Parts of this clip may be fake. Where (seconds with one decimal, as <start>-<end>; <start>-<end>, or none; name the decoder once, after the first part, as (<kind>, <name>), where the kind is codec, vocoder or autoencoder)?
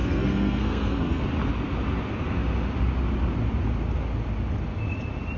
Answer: 0.0-1.2 (codec, SNAC)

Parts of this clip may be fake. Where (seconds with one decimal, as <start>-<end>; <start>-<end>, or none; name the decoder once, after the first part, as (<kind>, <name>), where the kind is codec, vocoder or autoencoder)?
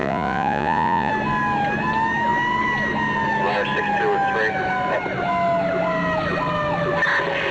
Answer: 0.0-1.1 (vocoder, Vocos)